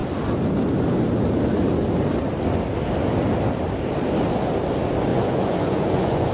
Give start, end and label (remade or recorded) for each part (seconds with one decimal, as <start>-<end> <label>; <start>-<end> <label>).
0.0-5.1 recorded; 5.1-6.3 remade